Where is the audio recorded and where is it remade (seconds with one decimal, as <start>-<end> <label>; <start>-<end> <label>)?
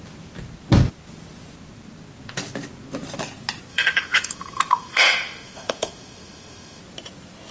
0.0-3.7 recorded; 3.7-6.8 remade; 6.8-7.5 recorded